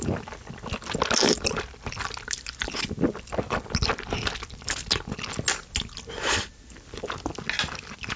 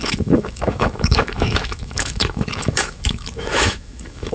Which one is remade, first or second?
second